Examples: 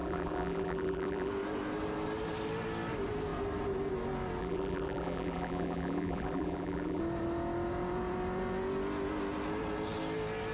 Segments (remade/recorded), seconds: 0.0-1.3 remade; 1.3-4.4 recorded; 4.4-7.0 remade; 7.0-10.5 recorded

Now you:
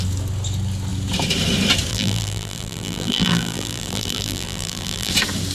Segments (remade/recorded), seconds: 0.0-1.9 recorded; 1.9-5.1 remade; 5.1-5.5 recorded

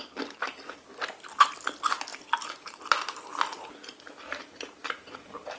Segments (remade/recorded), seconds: 0.0-5.6 recorded

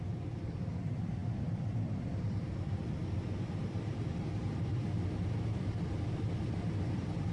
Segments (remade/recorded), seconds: 0.0-1.2 remade; 1.2-2.0 recorded; 2.0-7.3 remade

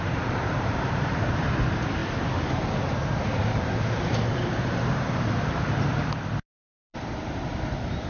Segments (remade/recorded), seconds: 0.0-2.0 remade; 2.0-3.2 recorded; 3.2-8.1 remade

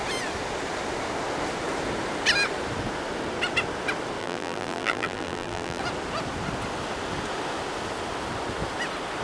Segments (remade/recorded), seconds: 0.0-4.2 recorded; 4.2-5.8 remade; 5.8-9.2 recorded

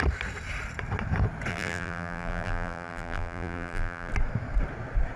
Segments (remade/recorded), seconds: 0.0-1.5 recorded; 1.5-4.1 remade; 4.1-5.2 recorded